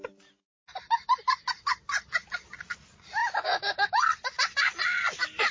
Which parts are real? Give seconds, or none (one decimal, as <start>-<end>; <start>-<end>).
0.0-5.5

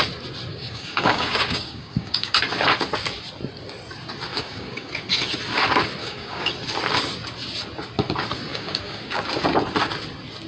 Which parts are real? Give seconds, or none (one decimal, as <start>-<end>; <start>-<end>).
0.0-0.5; 2.4-4.3; 4.9-6.0; 6.5-8.5; 9.2-10.5

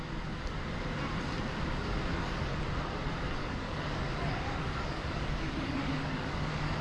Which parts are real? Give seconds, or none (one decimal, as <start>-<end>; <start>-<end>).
0.0-2.1; 2.6-3.4

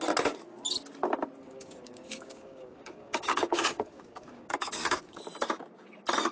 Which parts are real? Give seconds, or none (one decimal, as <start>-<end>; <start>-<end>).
0.0-1.4; 5.2-6.3